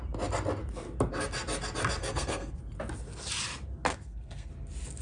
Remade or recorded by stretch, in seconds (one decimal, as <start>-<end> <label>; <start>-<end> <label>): 0.0-2.0 recorded; 2.0-2.6 remade; 2.6-3.9 recorded; 3.9-4.5 remade; 4.5-5.0 recorded